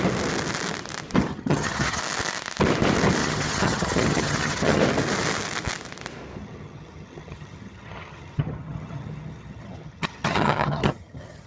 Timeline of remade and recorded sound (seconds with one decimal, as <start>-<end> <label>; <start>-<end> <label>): 0.0-1.3 recorded; 1.3-2.0 remade; 2.0-3.2 recorded; 3.2-4.8 remade; 4.8-6.4 recorded; 6.4-11.5 remade